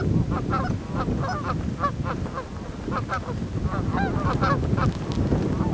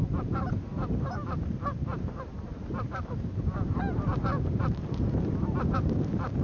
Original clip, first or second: first